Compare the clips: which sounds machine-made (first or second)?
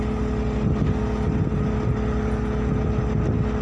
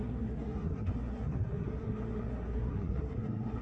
second